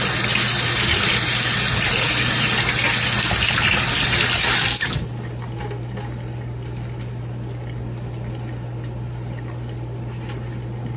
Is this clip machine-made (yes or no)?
no